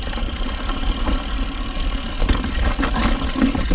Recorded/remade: recorded